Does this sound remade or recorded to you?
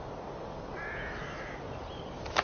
recorded